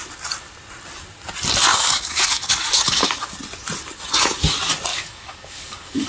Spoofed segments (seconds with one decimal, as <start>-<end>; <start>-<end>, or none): 1.7-3.2; 4.9-6.1